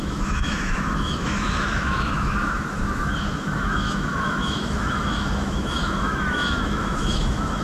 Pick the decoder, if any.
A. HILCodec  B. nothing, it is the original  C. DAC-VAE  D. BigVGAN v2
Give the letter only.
C